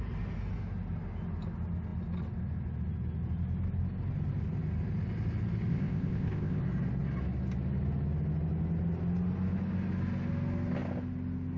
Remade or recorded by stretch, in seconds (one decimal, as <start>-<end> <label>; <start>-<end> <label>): 0.0-5.7 recorded; 5.7-6.6 remade; 6.6-11.6 recorded